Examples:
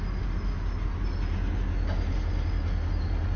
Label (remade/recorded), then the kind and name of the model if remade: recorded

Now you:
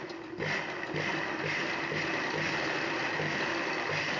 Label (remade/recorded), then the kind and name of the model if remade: remade, vocoder, BigVGAN v2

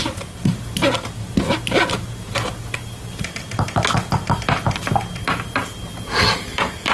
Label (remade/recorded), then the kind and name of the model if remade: recorded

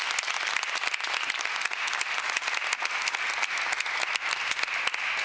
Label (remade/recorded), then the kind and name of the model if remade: recorded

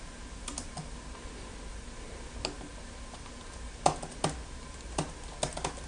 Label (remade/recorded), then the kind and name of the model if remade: recorded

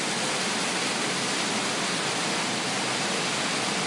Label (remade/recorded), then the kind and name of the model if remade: recorded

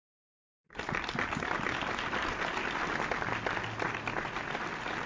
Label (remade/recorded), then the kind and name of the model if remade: recorded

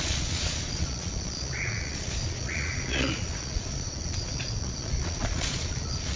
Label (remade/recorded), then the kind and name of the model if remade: remade, vocoder, Vocos